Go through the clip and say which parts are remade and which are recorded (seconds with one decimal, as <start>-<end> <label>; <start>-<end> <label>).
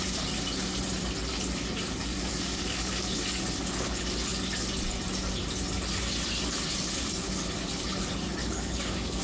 0.0-2.1 recorded; 2.1-3.1 remade; 3.1-8.4 recorded; 8.4-9.2 remade